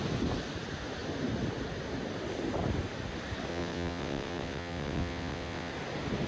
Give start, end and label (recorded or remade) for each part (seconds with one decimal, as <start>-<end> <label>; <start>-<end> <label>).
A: 0.0-3.5 recorded; 3.5-5.7 remade; 5.7-6.3 recorded